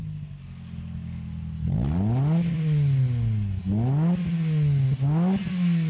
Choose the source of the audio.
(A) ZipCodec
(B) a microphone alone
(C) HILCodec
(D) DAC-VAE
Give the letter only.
B